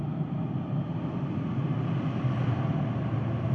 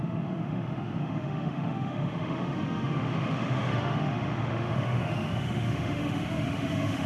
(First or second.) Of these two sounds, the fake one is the second